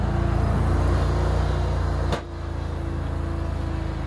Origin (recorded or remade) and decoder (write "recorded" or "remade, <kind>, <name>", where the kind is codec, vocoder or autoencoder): recorded